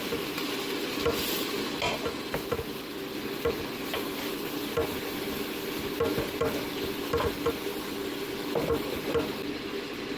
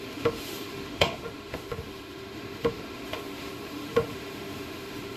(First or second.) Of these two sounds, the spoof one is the second